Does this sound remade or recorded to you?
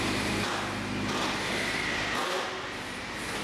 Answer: recorded